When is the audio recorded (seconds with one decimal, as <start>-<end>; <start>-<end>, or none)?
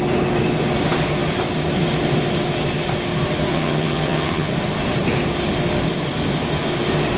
0.0-3.5; 4.5-7.2